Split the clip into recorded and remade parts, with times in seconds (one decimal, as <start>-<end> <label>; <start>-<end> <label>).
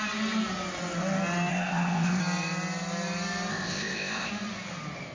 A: 0.0-1.5 recorded; 1.5-2.2 remade; 2.2-3.5 recorded; 3.5-4.3 remade; 4.3-5.1 recorded